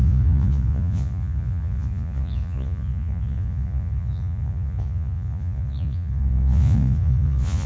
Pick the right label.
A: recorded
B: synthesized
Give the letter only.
B